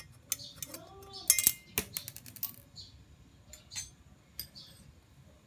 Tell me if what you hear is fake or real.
real